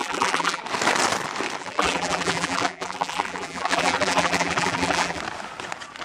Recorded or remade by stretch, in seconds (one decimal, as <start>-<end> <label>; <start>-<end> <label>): 0.0-0.6 remade; 0.6-1.6 recorded; 1.6-5.2 remade; 5.2-6.0 recorded